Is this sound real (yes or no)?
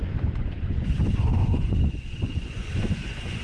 no